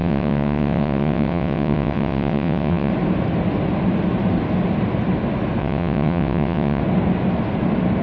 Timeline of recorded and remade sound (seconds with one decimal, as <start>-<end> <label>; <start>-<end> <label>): 0.0-2.9 remade; 2.9-5.6 recorded; 5.6-6.8 remade; 6.8-8.0 recorded